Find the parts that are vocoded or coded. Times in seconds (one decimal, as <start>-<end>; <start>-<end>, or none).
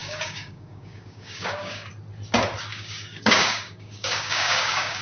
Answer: 0.0-1.9; 2.7-5.0